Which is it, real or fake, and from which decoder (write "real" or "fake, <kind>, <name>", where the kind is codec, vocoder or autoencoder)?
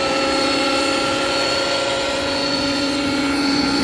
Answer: fake, vocoder, Vocos